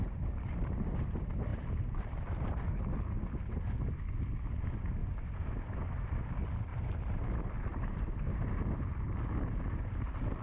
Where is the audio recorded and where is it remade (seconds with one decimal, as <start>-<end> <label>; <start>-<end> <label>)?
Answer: 0.0-1.5 recorded; 1.5-2.8 remade; 2.8-5.0 recorded; 5.0-6.3 remade; 6.3-6.7 recorded; 6.7-7.2 remade; 7.2-7.7 recorded; 7.7-8.4 remade; 8.4-10.4 recorded